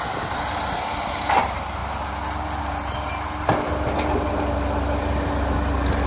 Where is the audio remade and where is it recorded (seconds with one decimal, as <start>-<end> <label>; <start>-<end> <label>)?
0.0-6.1 recorded